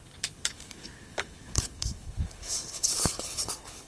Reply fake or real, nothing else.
fake